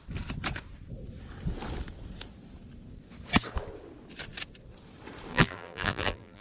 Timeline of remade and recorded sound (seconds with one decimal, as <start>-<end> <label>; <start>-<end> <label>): 0.0-5.3 recorded; 5.3-6.4 remade